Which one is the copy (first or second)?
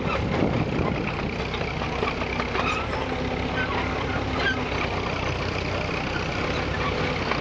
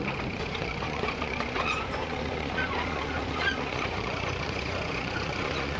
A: second